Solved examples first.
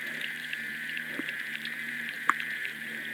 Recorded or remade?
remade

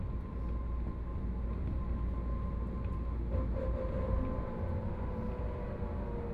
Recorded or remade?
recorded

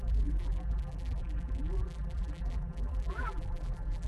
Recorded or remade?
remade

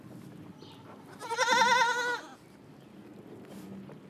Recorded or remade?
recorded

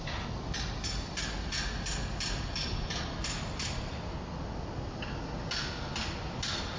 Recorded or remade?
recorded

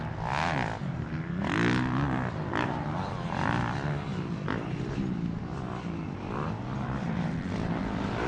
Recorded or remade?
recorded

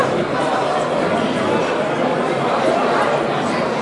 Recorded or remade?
recorded